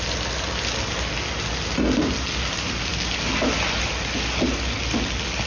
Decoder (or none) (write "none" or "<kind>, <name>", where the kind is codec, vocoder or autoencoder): none